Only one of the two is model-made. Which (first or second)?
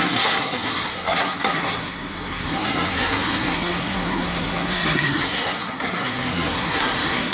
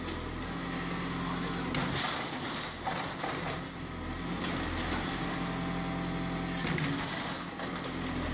first